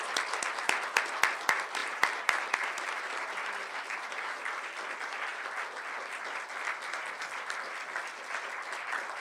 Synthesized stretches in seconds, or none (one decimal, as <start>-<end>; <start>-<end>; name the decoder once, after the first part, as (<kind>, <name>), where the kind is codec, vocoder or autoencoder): 1.8-3.0 (vocoder, BigVGAN v2)